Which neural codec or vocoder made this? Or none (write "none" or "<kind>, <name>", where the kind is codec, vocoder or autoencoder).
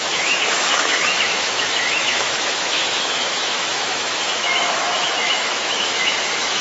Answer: autoencoder, DAC-VAE